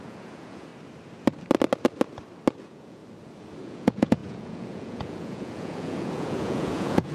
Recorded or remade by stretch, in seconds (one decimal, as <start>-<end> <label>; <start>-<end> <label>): 0.0-0.7 remade; 0.7-2.6 recorded; 2.6-3.0 remade; 3.0-3.6 recorded; 3.6-7.1 remade